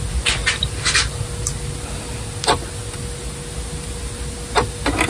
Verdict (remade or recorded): recorded